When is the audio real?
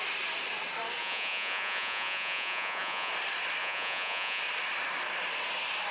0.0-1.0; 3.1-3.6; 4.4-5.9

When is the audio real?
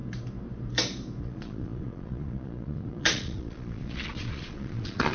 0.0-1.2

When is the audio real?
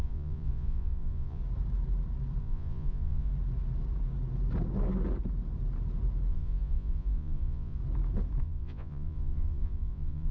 1.4-2.4; 3.3-6.3; 7.8-8.4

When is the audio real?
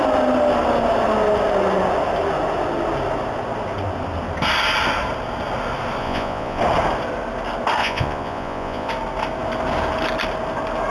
0.0-6.0; 6.6-7.8; 8.9-10.9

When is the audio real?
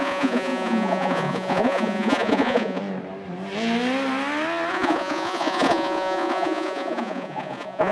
2.8-4.7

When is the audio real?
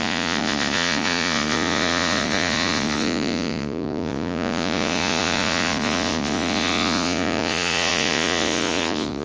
none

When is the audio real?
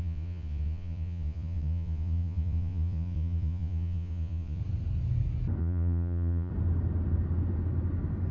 4.6-5.6; 6.5-8.3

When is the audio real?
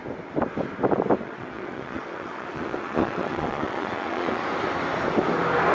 0.0-1.2; 4.4-5.7